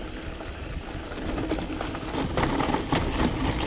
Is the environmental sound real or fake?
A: real